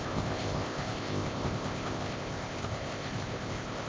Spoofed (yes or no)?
yes